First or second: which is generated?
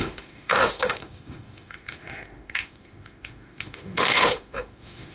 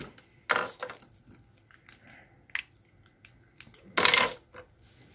first